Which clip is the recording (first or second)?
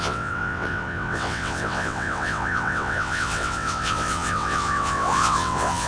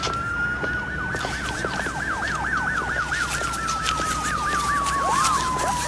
second